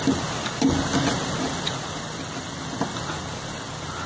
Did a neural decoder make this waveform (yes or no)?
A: no